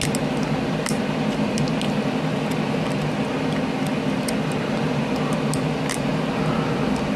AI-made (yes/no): no